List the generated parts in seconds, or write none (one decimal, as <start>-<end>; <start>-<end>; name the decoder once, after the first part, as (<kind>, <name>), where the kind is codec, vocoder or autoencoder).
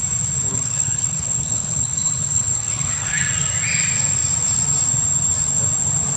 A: 0.5-3.2 (codec, HILCodec)